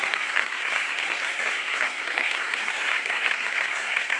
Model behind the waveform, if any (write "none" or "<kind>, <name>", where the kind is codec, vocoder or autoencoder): codec, SNAC